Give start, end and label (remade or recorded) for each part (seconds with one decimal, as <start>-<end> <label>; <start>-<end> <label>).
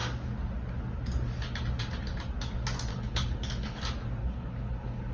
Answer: 0.0-2.9 recorded; 2.9-3.8 remade; 3.8-4.2 recorded; 4.2-5.1 remade